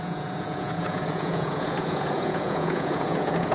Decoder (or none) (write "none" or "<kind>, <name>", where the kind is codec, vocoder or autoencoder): vocoder, Vocos